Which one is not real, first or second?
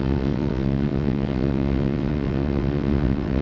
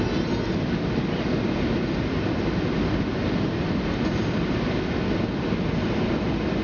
first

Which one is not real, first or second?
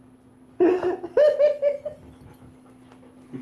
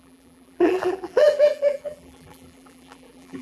second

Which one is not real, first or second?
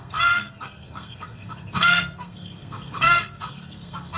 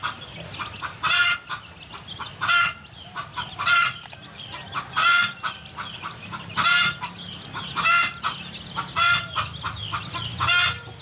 first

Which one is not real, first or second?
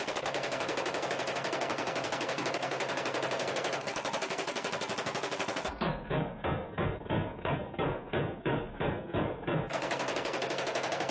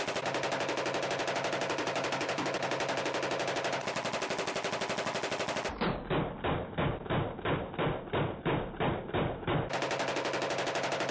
first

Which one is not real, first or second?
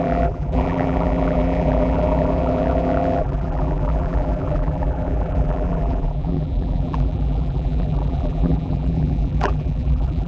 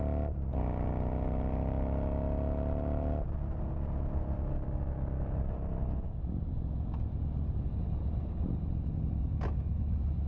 first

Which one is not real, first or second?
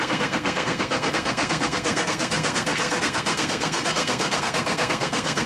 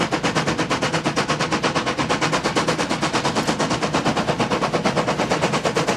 first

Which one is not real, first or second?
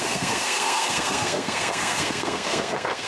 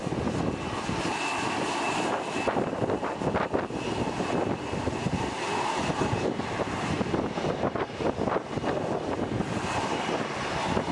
first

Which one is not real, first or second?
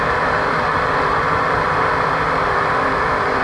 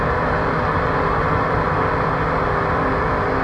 first